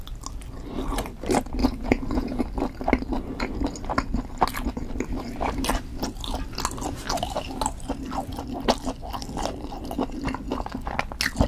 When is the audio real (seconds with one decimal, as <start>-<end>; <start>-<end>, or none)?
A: 0.0-1.6; 2.4-11.5